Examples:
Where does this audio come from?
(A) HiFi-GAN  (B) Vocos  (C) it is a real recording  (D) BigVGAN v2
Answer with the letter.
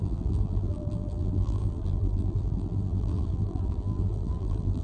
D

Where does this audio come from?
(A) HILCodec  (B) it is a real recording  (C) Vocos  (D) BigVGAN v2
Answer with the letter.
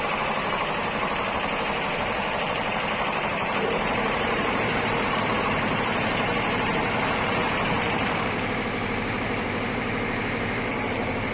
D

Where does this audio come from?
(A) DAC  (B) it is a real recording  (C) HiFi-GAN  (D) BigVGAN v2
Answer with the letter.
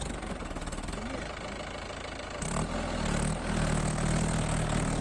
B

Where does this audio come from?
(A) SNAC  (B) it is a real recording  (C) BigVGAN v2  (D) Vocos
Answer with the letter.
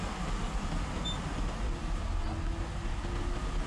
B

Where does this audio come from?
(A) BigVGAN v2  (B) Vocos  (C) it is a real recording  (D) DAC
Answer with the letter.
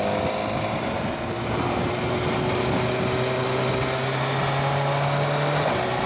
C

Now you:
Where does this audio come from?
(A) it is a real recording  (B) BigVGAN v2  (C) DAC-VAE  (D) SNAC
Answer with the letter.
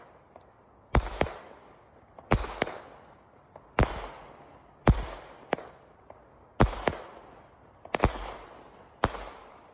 A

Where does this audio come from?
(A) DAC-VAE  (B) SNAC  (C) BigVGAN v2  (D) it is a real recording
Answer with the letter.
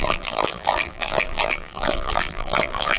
C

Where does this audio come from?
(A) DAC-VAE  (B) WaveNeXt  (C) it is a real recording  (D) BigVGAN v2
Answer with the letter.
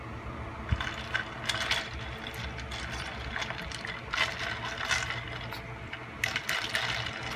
C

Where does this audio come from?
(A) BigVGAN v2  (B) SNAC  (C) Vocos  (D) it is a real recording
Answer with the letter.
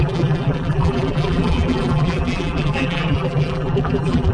A